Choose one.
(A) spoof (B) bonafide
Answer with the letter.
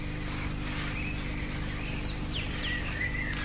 B